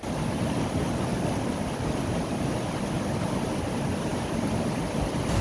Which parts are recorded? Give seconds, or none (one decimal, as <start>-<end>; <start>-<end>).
0.0-5.4